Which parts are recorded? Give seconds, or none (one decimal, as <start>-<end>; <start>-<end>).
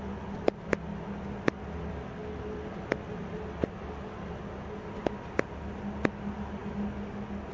0.0-7.5